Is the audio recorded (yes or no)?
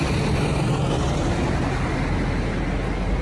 yes